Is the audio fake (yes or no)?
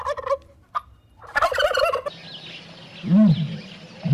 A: no